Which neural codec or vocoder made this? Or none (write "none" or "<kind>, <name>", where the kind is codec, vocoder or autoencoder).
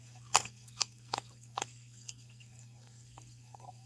codec, SNAC